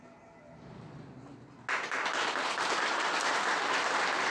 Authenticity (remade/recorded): recorded